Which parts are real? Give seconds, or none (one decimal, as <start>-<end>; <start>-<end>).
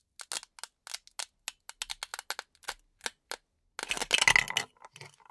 0.0-5.3